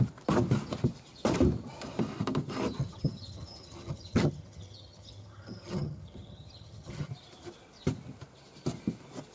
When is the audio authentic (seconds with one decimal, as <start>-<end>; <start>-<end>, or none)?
0.0-2.8; 7.1-9.3